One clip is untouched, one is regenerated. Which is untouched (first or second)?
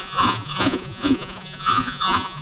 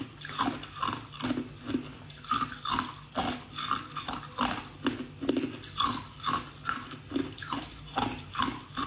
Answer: second